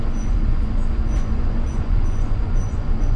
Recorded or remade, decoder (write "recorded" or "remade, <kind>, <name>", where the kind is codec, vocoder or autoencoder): remade, vocoder, Vocos